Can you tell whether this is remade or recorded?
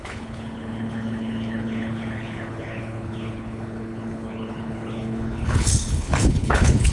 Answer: remade